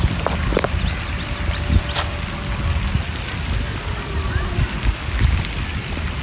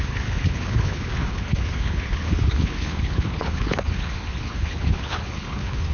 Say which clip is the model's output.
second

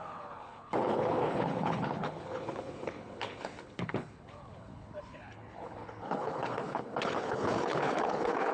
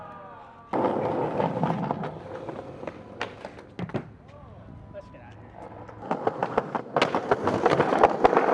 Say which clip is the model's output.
first